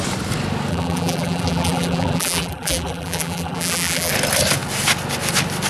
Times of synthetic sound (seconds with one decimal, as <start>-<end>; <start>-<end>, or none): 0.7-4.1